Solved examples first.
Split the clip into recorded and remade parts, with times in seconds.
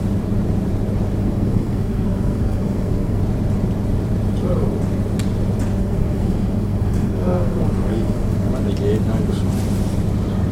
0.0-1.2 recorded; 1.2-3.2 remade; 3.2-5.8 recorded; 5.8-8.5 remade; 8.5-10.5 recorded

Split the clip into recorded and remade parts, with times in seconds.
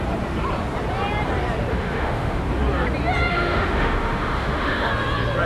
0.0-1.7 recorded; 1.7-2.4 remade; 2.4-3.3 recorded; 3.3-4.9 remade; 4.9-5.5 recorded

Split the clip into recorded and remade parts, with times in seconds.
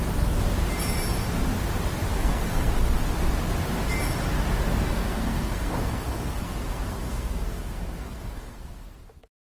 0.0-2.1 recorded; 2.1-2.7 remade; 2.7-4.8 recorded; 4.8-9.0 remade; 9.0-9.4 recorded